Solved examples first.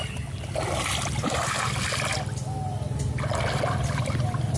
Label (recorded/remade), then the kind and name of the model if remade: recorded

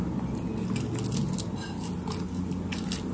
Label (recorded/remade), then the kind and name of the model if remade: recorded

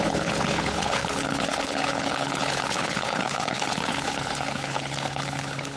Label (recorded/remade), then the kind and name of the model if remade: remade, codec, HILCodec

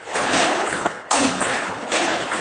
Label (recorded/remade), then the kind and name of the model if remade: remade, codec, HILCodec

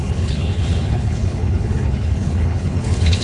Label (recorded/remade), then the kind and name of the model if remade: remade, codec, HILCodec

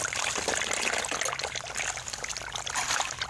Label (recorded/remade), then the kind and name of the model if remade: recorded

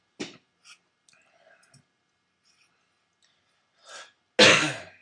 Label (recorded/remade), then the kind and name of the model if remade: recorded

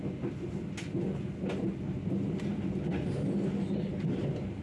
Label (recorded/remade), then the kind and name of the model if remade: recorded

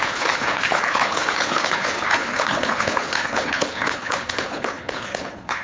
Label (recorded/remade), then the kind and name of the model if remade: remade, codec, HILCodec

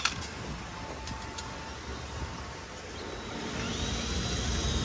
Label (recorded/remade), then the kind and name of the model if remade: recorded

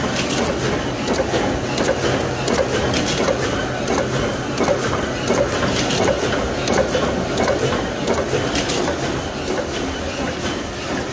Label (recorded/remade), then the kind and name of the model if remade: recorded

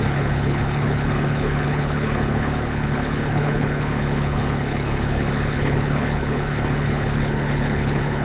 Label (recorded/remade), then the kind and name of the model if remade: remade, codec, HILCodec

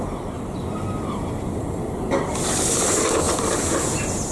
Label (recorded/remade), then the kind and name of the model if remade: recorded